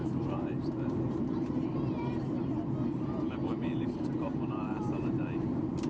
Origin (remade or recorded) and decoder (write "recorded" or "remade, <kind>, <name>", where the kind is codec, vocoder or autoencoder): remade, vocoder, BigVGAN v2